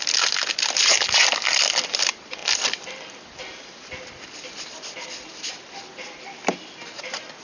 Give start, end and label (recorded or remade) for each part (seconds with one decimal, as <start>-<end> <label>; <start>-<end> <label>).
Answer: 0.0-7.4 recorded